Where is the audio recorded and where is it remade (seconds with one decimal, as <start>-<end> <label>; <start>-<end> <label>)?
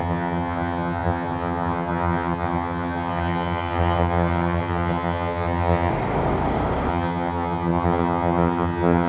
0.0-5.9 remade; 5.9-6.9 recorded; 6.9-9.1 remade